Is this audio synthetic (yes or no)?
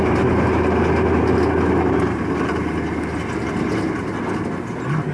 no